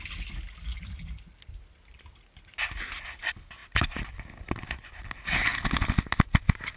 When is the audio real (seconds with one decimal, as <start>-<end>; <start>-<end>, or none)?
0.0-0.7; 1.6-3.6; 4.4-6.8